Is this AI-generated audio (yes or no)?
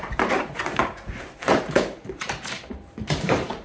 yes